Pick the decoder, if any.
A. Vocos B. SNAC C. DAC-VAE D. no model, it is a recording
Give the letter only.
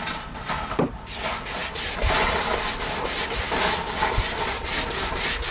D